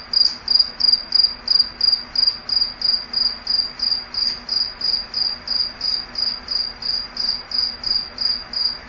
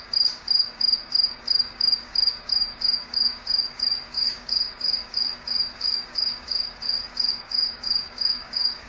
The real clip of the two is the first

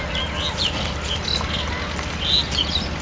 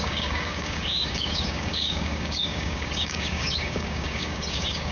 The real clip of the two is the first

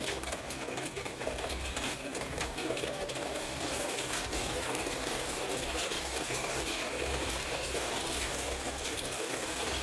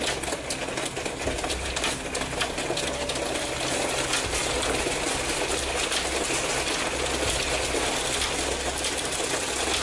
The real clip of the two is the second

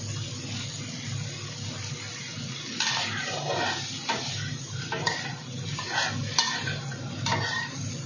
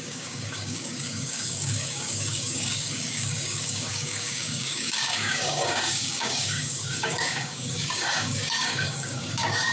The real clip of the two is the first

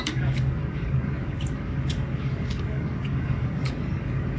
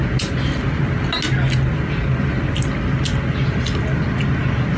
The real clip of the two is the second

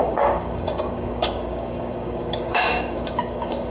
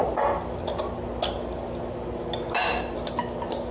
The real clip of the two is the second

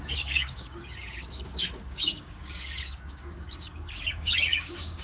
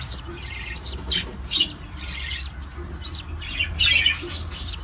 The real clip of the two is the second